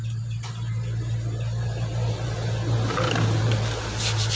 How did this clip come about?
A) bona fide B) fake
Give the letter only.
A